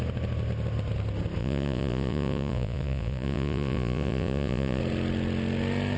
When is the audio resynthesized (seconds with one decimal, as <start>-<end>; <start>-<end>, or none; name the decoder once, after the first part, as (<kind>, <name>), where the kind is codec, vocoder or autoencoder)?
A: 1.4-4.8 (vocoder, Vocos)